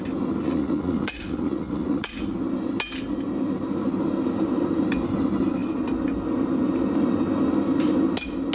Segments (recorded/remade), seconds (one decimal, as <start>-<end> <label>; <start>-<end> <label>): 0.0-0.4 recorded; 0.4-2.2 remade; 2.2-8.5 recorded